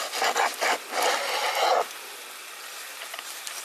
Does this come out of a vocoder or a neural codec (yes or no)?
no